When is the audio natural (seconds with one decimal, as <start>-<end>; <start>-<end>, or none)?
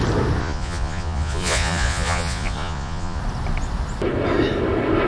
0.0-0.4; 3.2-5.1